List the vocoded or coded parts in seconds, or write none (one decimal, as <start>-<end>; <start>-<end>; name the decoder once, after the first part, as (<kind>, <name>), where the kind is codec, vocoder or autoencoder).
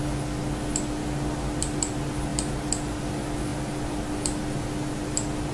none